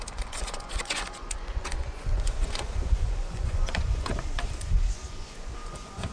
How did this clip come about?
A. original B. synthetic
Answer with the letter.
B